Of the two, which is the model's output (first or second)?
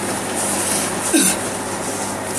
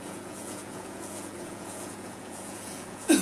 second